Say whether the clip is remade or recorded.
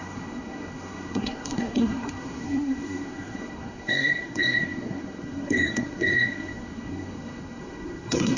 remade